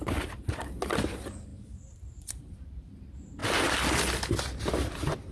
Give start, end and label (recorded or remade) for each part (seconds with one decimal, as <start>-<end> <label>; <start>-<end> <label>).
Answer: 0.0-1.5 recorded; 1.5-2.9 remade; 2.9-5.3 recorded